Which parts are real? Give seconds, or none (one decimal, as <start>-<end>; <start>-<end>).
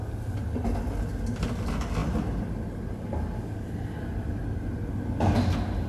0.0-5.9